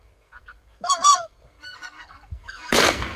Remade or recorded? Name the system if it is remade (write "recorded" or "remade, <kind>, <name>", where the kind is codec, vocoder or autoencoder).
remade, codec, SNAC